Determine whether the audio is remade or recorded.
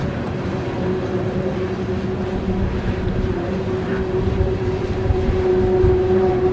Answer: recorded